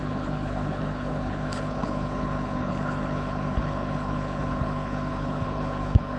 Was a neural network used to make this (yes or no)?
yes